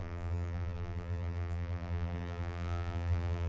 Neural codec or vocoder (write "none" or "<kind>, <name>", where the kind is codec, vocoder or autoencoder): vocoder, BigVGAN v2